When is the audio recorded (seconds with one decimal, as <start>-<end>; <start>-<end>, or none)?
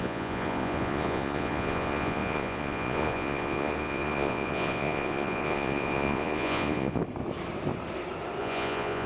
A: 7.0-8.4